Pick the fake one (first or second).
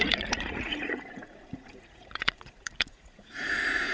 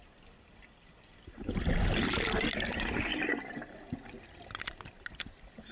first